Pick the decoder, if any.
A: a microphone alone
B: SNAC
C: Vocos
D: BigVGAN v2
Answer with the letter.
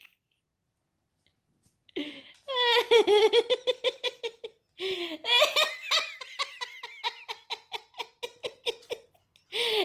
A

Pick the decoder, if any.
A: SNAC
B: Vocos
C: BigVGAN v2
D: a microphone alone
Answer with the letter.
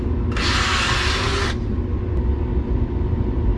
D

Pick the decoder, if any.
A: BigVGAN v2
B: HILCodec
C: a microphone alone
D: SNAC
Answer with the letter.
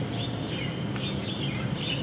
C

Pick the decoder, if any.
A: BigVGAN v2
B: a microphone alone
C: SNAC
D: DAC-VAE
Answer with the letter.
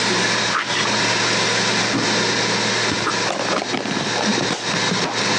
B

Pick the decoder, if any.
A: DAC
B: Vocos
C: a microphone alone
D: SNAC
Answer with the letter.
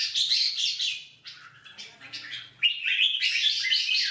C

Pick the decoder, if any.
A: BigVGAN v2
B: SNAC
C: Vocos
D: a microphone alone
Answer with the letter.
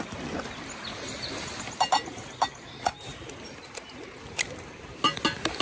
D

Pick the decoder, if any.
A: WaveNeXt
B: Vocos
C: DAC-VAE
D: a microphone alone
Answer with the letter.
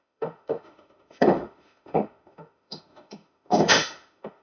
C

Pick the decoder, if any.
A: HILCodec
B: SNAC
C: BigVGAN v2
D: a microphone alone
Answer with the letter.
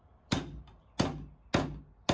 D